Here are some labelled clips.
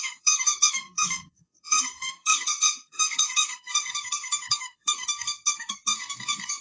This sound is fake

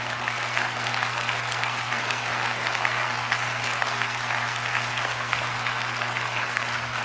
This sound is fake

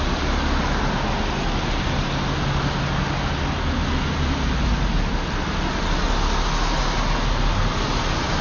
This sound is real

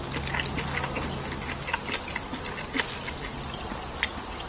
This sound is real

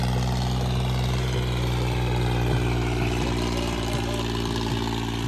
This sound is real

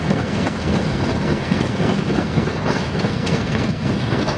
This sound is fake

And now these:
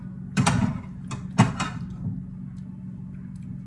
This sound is real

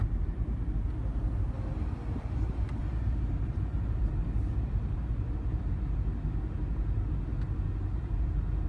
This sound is real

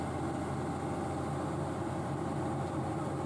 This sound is real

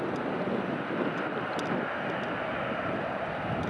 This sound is real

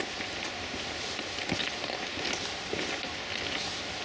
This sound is real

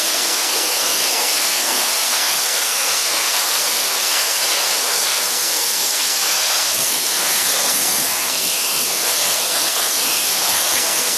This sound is fake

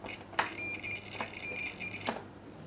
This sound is real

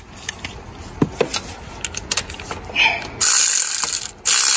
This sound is real